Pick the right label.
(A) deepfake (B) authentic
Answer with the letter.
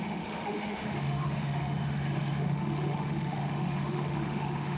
A